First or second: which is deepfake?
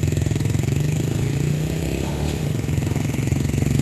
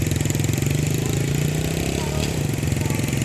first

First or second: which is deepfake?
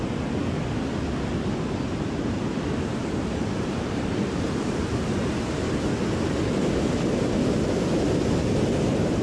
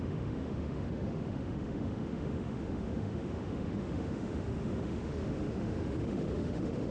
second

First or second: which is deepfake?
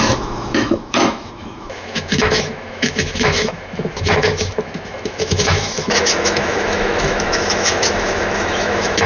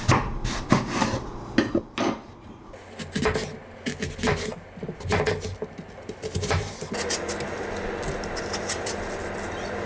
first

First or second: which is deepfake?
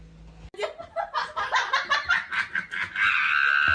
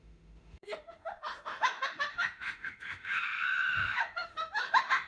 second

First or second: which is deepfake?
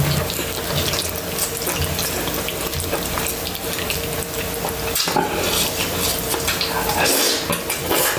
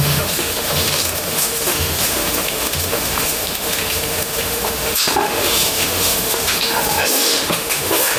second